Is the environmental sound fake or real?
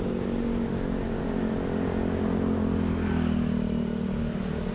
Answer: real